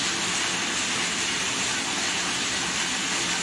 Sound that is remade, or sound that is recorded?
recorded